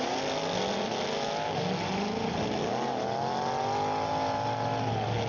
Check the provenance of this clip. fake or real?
real